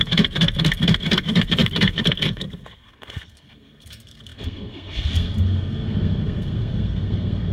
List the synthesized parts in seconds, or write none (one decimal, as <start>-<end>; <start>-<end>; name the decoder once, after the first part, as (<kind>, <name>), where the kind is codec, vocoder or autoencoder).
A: 0.0-7.5 (codec, SNAC)